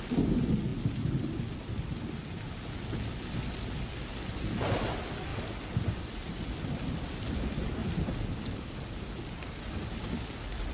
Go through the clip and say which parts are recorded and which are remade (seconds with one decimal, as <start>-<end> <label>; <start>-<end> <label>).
0.0-10.7 recorded